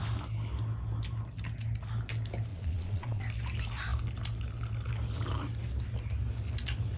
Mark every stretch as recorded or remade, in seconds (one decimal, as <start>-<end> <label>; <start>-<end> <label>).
0.0-2.5 recorded; 2.5-3.2 remade; 3.2-7.0 recorded